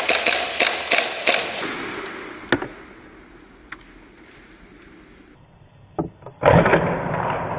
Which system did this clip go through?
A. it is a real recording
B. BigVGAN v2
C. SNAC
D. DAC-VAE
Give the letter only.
A